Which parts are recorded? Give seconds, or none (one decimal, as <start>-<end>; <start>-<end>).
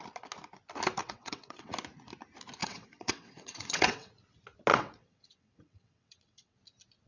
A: 0.0-1.0; 1.7-2.6; 4.1-4.7; 6.6-7.1